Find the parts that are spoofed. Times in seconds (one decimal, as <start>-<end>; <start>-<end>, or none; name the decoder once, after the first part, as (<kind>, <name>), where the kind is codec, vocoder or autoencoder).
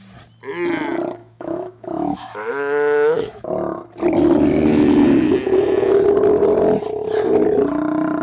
1.2-3.5 (autoencoder, DAC-VAE)